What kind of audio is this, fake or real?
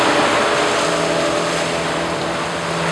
real